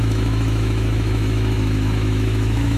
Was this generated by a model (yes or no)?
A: yes